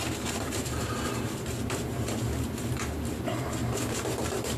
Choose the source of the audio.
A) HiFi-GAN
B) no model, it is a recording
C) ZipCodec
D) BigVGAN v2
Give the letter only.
D